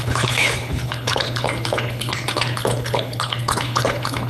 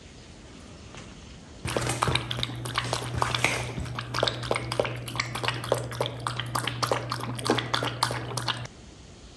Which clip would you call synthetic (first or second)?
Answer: first